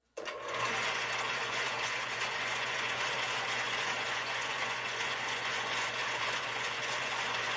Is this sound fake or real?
fake